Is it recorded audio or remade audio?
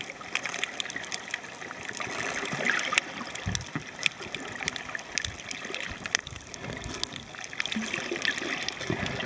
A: recorded